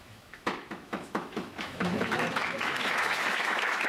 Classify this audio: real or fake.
fake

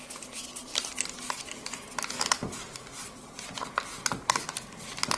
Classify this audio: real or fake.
real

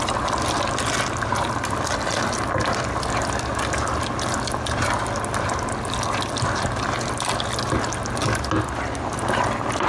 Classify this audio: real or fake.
real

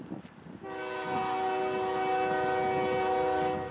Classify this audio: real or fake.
real